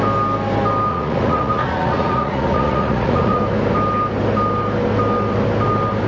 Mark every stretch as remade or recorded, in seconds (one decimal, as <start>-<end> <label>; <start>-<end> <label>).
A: 0.0-0.9 recorded; 0.9-3.4 remade; 3.4-6.1 recorded